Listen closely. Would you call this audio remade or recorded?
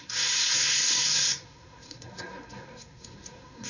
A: remade